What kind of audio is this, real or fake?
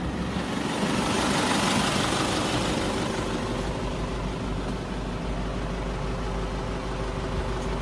real